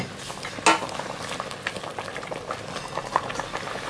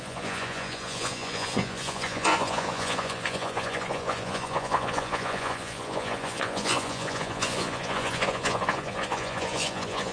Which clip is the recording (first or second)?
first